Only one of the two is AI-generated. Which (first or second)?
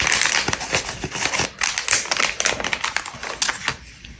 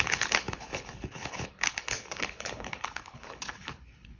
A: second